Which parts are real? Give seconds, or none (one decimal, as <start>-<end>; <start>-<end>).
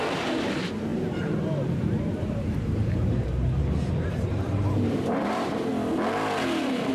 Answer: 5.7-6.9